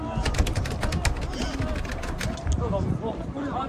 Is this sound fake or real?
real